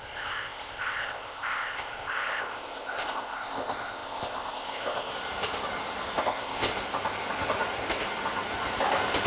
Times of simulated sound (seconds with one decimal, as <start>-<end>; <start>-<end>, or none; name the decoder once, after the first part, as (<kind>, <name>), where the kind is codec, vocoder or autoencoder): 0.0-5.1 (codec, ZipCodec); 6.2-6.7